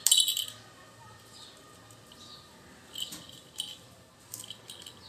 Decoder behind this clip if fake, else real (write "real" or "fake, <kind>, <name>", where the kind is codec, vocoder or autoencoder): real